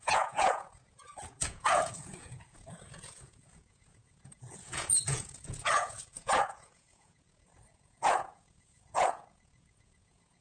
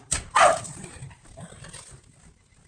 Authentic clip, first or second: second